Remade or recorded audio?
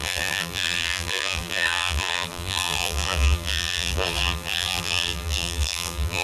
remade